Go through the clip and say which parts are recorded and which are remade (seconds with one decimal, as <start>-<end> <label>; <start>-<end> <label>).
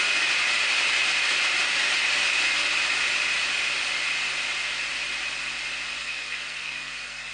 0.0-6.0 recorded; 6.0-7.3 remade